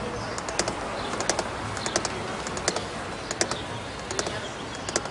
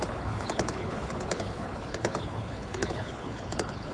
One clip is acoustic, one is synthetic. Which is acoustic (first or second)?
first